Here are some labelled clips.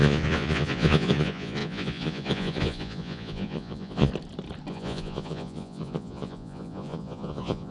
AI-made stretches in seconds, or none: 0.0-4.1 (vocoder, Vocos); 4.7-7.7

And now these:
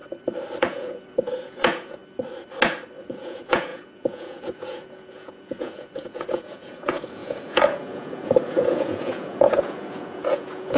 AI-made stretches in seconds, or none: 0.6-2.0 (vocoder, Vocos); 3.0-10.8

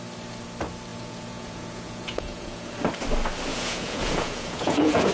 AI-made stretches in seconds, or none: 0.9-2.7 (vocoder, Vocos); 3.5-5.1

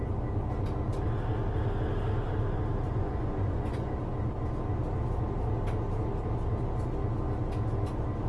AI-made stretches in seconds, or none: 2.9-3.9 (vocoder, Vocos)

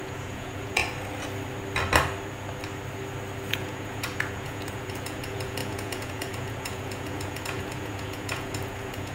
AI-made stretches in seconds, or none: 0.0-0.8 (vocoder, Vocos); 3.5-9.1

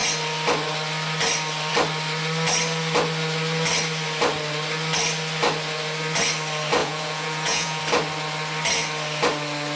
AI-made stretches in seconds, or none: 6.8-7.8 (vocoder, Vocos)

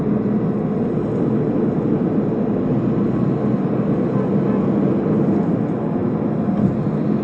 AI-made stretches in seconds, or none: none

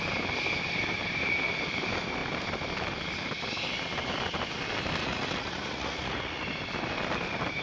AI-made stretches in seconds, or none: 5.0-6.4 (vocoder, Vocos)